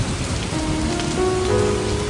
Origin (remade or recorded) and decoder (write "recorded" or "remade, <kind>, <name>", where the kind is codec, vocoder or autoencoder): recorded